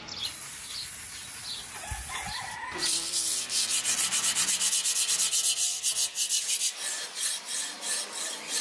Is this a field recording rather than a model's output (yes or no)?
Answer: yes